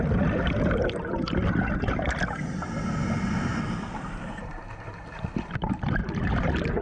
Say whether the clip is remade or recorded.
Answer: recorded